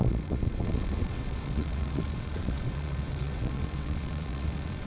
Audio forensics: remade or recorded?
remade